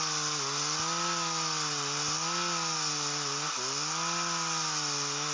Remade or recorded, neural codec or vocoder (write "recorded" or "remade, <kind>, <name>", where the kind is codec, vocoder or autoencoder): recorded